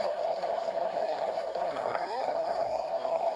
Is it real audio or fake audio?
fake